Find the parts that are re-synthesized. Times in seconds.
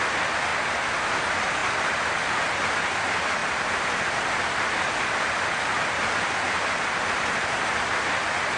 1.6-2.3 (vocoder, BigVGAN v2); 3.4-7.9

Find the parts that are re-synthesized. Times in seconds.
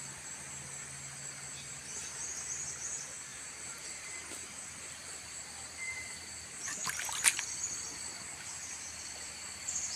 3.3-6.3 (vocoder, BigVGAN v2)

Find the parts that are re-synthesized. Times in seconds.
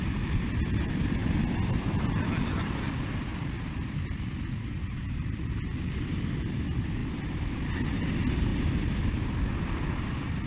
0.0-7.0 (vocoder, BigVGAN v2); 7.7-8.5; 9.5-10.5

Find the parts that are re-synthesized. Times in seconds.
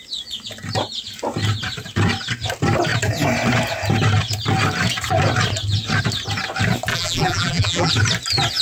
6.9-7.9 (vocoder, BigVGAN v2)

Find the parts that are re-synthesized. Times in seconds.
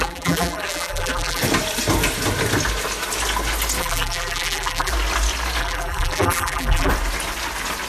0.0-1.4 (vocoder, BigVGAN v2); 3.8-4.9; 5.6-6.9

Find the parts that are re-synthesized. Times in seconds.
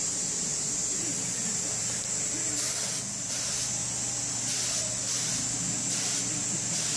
0.5-2.0 (vocoder, BigVGAN v2)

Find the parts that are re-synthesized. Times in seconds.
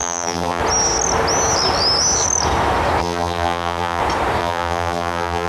0.0-0.6 (vocoder, BigVGAN v2); 3.0-4.0; 4.4-5.5